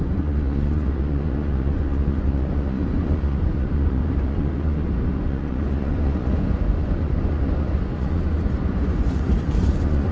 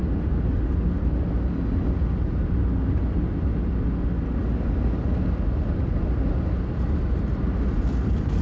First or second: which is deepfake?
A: first